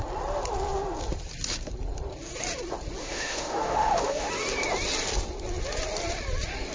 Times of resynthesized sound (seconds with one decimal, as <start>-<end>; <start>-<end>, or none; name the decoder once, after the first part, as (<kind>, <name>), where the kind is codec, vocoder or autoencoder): 3.0-4.3 (autoencoder, DAC-VAE)